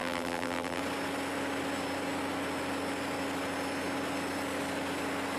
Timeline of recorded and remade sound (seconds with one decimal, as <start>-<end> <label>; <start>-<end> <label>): 0.0-0.8 remade; 0.8-5.4 recorded